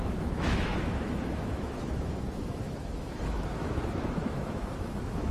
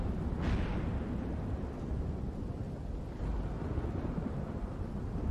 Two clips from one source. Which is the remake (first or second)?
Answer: first